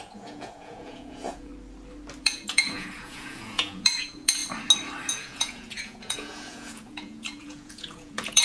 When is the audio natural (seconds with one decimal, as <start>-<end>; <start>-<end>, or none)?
1.5-2.2; 4.4-5.1